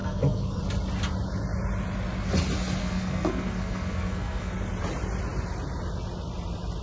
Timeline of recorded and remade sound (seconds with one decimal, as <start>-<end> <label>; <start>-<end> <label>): 0.0-0.6 remade; 0.6-2.8 recorded; 2.8-4.5 remade; 4.5-6.8 recorded